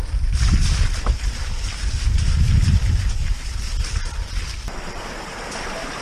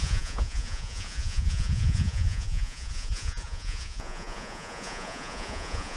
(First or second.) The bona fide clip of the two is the first